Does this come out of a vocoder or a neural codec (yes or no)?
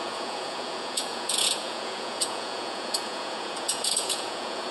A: yes